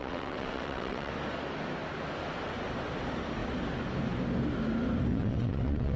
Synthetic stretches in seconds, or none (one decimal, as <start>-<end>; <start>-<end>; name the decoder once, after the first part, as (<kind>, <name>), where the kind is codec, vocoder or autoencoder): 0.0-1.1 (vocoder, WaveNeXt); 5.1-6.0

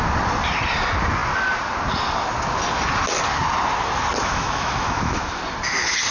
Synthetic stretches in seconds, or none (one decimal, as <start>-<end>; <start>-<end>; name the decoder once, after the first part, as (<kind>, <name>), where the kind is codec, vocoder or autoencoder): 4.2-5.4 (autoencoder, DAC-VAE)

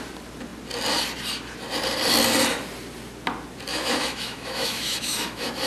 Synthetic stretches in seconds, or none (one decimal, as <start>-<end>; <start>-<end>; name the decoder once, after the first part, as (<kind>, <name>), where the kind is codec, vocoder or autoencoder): 3.7-5.7 (autoencoder, DAC-VAE)

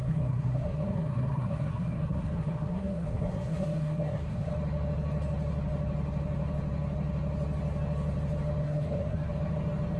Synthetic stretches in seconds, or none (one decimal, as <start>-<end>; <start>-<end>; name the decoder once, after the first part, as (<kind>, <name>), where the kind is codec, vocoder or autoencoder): 0.0-4.5 (codec, SNAC); 8.6-9.3

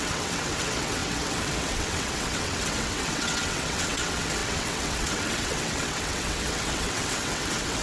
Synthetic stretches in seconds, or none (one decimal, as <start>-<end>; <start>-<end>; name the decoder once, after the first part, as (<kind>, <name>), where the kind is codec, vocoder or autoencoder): 0.0-7.8 (vocoder, WaveNeXt)

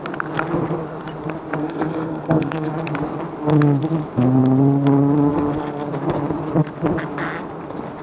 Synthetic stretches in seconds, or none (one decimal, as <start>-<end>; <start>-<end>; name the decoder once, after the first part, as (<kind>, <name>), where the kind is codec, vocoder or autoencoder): 1.6-2.7 (codec, SNAC)

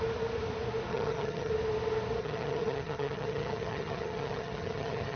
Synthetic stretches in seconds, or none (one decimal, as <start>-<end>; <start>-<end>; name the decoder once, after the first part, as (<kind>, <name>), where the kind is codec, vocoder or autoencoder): 0.9-1.5 (vocoder, HiFi-GAN); 2.2-5.2

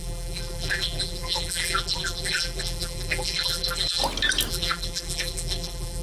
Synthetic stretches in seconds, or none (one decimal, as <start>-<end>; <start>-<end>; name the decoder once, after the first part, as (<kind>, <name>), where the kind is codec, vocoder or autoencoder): 0.0-4.0 (vocoder, BigVGAN v2); 4.5-6.0